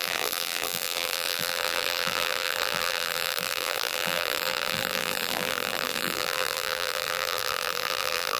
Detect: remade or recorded remade